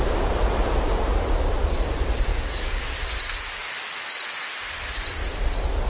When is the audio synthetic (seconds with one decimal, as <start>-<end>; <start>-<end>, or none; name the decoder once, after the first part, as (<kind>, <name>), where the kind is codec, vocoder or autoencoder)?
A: 2.3-2.8 (codec, DAC)